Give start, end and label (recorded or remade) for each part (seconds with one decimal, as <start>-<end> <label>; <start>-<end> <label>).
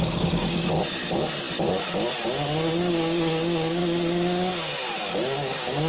0.0-0.6 remade; 0.6-2.9 recorded; 2.9-3.8 remade; 3.8-5.1 recorded; 5.1-5.9 remade